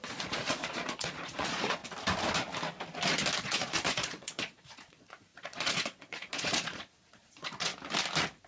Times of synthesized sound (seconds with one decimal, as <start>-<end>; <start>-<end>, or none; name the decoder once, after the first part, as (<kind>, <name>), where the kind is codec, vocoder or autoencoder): 0.0-1.8 (vocoder, Vocos); 3.4-7.7